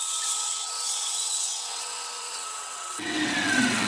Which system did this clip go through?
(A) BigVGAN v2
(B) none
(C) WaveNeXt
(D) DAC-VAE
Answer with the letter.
C